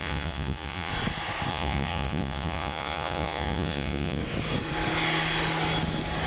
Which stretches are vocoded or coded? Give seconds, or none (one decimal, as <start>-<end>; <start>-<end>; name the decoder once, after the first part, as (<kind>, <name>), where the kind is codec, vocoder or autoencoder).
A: 0.0-0.9 (vocoder, Vocos); 1.5-4.2